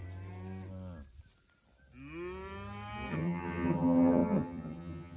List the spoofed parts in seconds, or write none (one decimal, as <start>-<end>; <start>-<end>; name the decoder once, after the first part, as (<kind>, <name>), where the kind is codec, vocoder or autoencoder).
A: 3.1-5.2 (vocoder, HiFi-GAN)

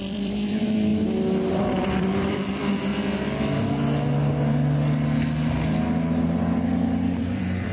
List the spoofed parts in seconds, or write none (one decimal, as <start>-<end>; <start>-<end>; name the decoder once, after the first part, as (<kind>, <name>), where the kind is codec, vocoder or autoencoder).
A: 0.0-0.9 (vocoder, BigVGAN v2); 1.5-2.9; 7.2-7.7

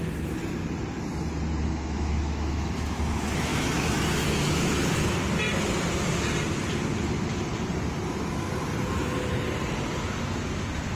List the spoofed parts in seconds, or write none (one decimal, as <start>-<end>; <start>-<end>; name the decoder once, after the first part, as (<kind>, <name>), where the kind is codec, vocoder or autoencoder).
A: 1.6-3.0 (autoencoder, DAC-VAE); 3.5-4.8

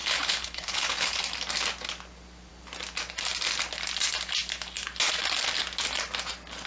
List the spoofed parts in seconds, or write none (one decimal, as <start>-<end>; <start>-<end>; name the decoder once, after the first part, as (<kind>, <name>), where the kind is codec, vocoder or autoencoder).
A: 0.0-1.2 (codec, HILCodec)

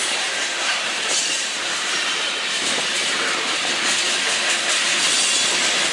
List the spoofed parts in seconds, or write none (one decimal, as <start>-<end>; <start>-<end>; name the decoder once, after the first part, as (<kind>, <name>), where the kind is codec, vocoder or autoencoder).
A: 0.0-3.5 (vocoder, BigVGAN v2)

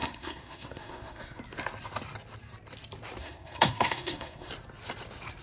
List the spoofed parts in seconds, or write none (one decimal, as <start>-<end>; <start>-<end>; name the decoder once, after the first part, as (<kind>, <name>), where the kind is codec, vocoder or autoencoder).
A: 0.0-1.4 (codec, SNAC); 3.2-4.5

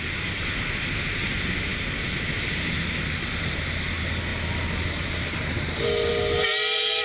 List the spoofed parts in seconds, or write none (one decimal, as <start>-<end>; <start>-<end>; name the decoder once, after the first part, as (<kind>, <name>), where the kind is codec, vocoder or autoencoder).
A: none

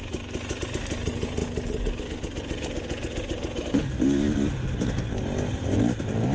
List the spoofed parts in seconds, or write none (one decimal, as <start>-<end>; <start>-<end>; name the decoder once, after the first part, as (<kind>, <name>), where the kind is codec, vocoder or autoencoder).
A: none